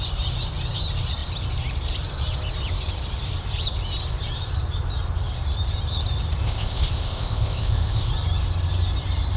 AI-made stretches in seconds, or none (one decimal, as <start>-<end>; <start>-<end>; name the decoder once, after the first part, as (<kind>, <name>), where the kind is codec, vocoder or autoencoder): 6.4-8.1 (codec, ZipCodec)